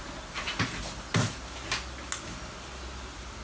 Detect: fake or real real